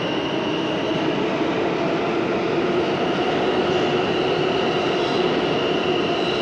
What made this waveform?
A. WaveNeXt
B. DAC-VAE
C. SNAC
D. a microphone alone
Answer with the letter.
D